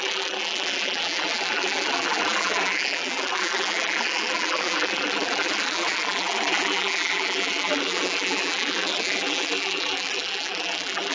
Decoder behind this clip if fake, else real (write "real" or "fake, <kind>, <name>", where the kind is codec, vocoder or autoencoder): fake, vocoder, BigVGAN v2